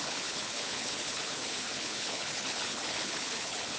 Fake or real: fake